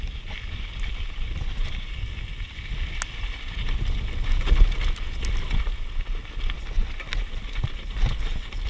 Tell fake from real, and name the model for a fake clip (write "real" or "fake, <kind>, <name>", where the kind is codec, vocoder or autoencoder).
real